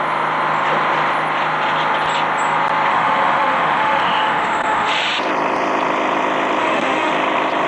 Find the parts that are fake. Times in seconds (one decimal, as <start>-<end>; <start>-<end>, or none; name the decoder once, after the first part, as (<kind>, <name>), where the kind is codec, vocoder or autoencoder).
2.9-5.1 (autoencoder, DAC-VAE); 6.6-7.1

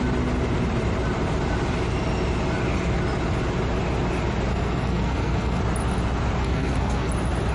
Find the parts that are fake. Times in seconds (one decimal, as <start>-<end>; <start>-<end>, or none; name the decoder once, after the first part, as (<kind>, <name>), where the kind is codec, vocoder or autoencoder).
4.5-5.6 (codec, SNAC); 6.4-7.1